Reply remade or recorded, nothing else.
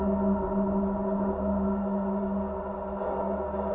recorded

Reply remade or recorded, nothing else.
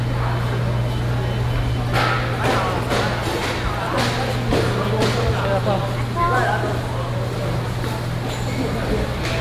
recorded